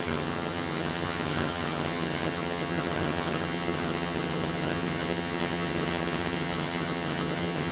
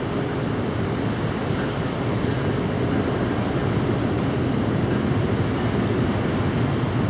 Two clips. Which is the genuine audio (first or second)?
second